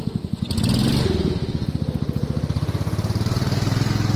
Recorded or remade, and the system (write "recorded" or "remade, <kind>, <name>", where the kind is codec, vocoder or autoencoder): recorded